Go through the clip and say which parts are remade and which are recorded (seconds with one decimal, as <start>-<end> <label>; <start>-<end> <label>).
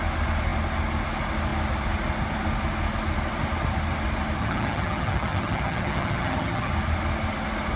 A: 0.0-4.4 recorded; 4.4-6.7 remade; 6.7-7.8 recorded